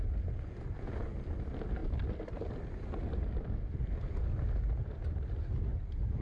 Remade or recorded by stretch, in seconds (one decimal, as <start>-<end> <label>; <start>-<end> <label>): 0.0-6.2 recorded